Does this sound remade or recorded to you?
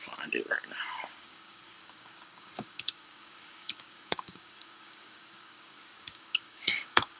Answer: remade